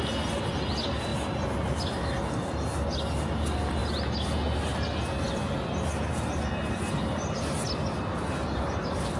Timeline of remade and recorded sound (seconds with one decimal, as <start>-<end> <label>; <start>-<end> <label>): 0.0-9.2 recorded